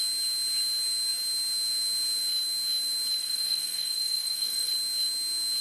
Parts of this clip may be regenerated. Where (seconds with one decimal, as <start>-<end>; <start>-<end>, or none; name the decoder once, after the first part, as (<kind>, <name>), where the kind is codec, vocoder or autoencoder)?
3.2-4.7 (codec, SNAC)